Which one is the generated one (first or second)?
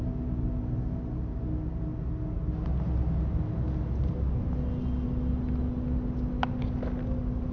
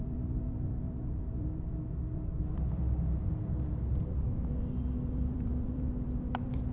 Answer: second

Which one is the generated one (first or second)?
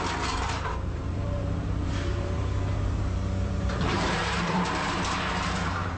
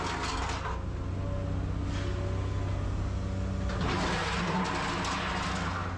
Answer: first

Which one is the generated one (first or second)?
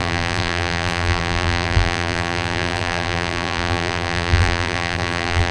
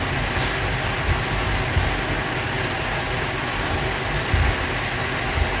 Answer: first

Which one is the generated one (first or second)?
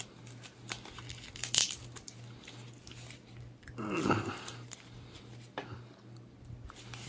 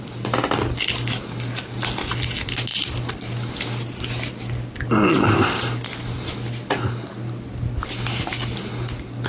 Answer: first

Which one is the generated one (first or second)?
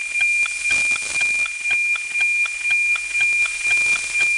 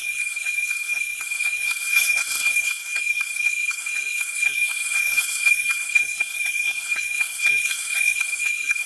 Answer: second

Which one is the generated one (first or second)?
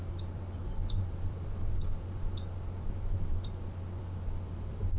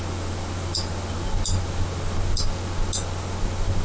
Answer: first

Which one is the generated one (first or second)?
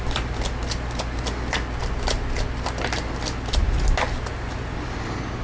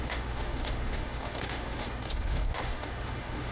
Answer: second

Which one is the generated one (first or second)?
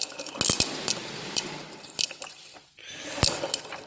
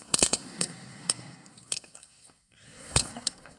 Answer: second